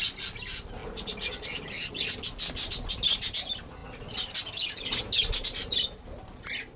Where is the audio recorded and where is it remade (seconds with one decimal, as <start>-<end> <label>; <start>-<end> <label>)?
0.0-6.8 recorded